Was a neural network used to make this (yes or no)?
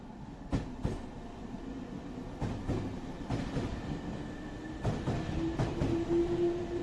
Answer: no